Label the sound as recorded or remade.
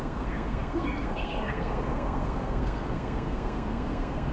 remade